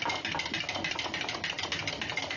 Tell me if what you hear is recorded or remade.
recorded